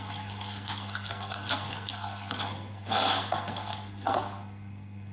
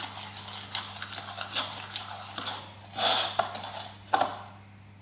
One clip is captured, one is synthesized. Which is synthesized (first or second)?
first